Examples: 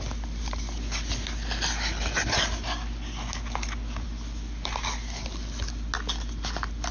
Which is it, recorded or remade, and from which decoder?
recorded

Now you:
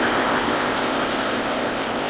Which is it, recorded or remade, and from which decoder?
remade, codec, ZipCodec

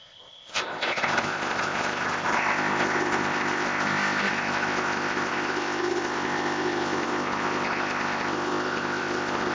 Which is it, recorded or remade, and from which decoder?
remade, codec, ZipCodec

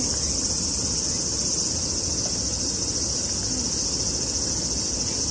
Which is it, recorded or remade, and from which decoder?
recorded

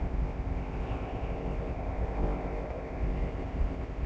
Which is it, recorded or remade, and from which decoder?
remade, codec, ZipCodec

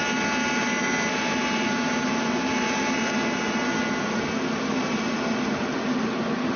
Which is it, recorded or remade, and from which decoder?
recorded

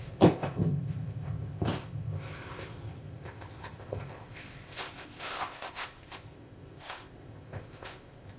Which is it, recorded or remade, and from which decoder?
remade, codec, ZipCodec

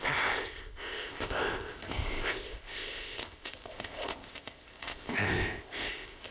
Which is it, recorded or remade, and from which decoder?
remade, codec, ZipCodec